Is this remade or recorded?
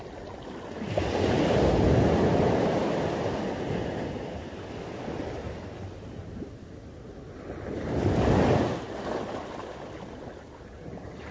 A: recorded